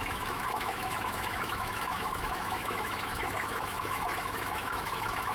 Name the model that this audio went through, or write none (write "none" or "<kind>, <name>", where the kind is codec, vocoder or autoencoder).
autoencoder, DAC-VAE